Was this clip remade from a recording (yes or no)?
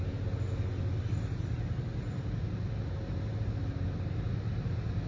no